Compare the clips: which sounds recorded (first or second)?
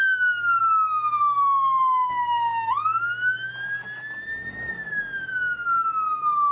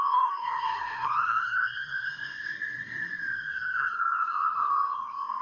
first